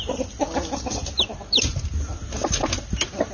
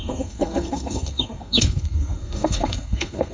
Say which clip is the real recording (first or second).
first